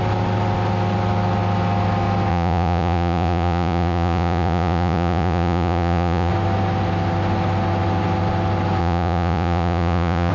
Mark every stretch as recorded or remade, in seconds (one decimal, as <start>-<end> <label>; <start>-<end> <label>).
0.0-2.3 recorded; 2.3-6.3 remade; 6.3-8.8 recorded; 8.8-10.3 remade